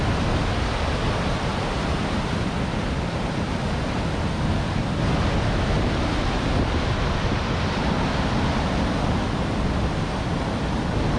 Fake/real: real